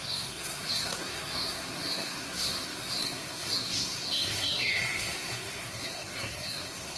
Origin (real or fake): fake